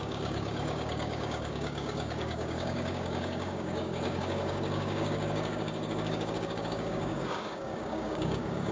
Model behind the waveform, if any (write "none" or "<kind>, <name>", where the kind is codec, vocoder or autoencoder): codec, DAC